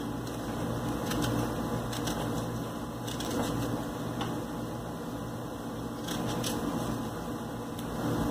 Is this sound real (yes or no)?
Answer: yes